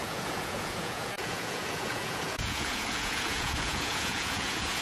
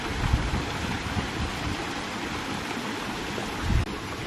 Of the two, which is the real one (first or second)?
second